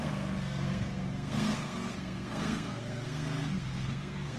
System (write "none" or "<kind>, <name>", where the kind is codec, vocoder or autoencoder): codec, SNAC